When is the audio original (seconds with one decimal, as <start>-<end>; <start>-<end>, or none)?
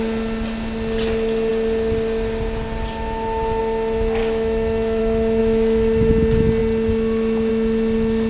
0.0-4.2; 5.0-5.4; 6.1-8.3